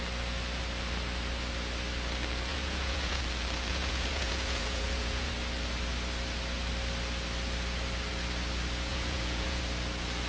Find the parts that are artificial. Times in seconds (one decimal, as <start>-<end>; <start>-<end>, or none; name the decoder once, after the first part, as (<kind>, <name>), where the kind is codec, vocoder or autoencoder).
2.5-3.2 (vocoder, Vocos); 3.7-5.3; 8.9-9.6